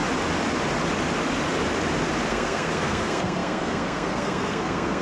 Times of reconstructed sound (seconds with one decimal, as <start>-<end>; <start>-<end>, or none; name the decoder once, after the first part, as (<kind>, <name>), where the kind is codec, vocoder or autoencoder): 2.3-5.0 (codec, SNAC)